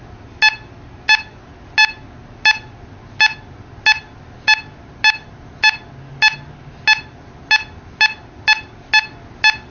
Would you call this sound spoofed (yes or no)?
no